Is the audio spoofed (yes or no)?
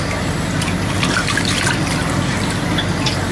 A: no